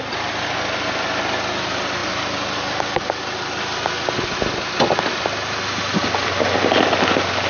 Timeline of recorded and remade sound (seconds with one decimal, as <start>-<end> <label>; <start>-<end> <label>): 0.0-7.5 recorded